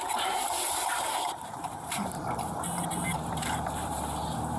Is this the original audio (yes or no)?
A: no